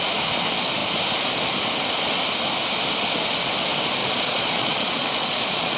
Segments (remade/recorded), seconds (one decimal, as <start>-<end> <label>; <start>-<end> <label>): 0.0-4.0 recorded; 4.0-5.8 remade